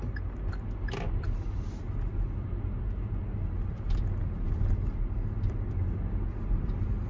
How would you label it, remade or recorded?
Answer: recorded